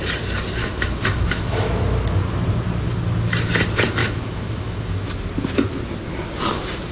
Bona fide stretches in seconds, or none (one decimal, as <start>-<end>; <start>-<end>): 0.0-0.6; 1.8-4.0; 4.8-6.9